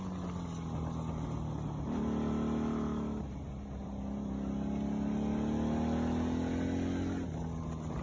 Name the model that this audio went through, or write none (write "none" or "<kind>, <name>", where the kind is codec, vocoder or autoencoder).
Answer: none